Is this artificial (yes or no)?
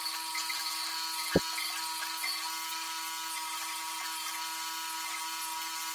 no